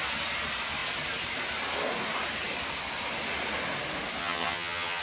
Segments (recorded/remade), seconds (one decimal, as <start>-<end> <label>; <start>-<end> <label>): 0.0-4.2 recorded; 4.2-5.0 remade